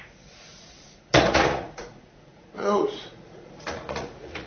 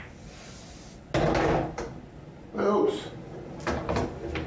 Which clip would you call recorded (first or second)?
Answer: second